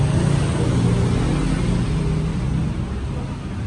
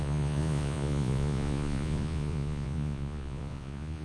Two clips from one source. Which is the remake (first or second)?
second